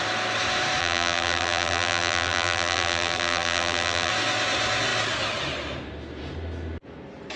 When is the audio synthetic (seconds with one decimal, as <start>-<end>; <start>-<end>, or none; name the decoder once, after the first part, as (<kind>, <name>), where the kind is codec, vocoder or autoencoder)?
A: 0.8-4.1 (vocoder, BigVGAN v2)